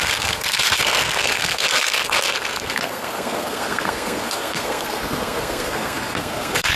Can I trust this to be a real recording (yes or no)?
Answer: no